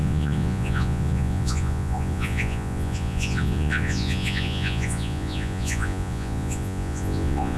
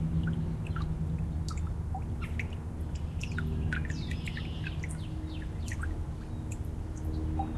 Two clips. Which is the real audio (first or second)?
second